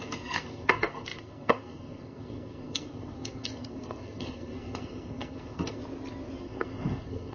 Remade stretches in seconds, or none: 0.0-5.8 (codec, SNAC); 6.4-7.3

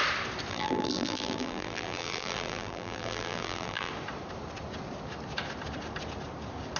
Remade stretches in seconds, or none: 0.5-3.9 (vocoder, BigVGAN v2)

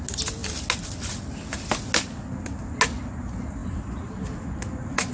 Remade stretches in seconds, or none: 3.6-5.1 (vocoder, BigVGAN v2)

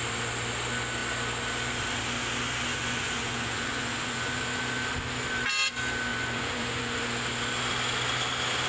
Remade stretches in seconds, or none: 2.7-4.6 (vocoder, Vocos); 6.1-7.0

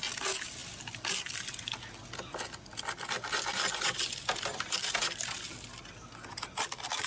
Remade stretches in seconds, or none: none

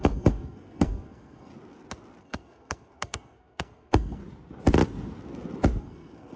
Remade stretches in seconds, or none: 0.0-1.5 (codec, SNAC); 2.2-4.2; 5.8-6.4